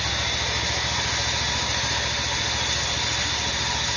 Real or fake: real